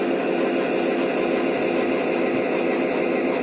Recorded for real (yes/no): yes